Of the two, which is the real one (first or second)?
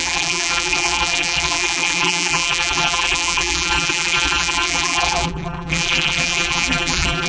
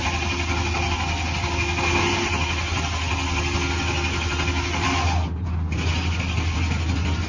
second